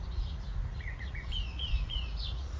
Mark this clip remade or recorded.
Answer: remade